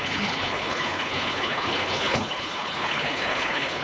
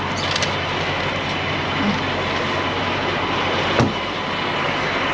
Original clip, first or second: second